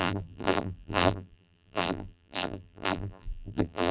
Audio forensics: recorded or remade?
remade